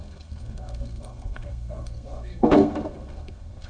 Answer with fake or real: fake